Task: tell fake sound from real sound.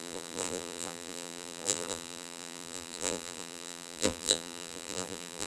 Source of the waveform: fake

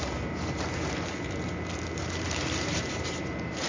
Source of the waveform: fake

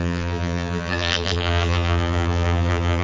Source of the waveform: fake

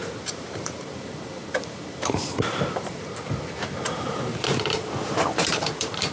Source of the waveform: fake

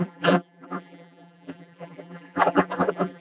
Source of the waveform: fake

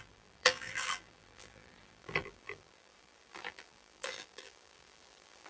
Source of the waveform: fake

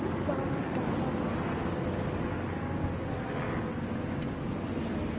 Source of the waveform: real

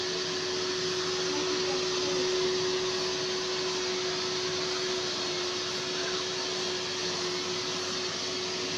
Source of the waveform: real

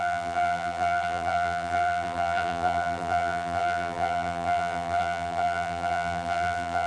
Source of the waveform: fake